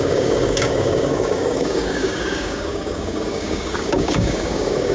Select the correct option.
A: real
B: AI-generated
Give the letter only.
B